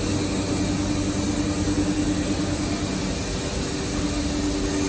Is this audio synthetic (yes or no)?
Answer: no